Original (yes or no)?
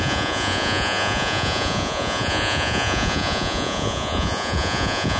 no